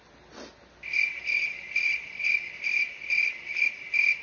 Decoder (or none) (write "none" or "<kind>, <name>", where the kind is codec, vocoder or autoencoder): none